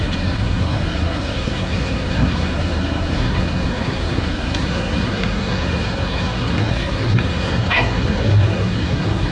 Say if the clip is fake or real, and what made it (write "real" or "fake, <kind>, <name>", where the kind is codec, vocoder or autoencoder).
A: fake, codec, SNAC